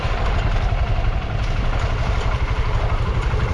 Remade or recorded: recorded